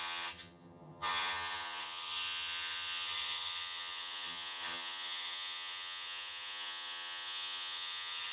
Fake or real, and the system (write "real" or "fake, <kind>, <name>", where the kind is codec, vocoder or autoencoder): fake, vocoder, HiFi-GAN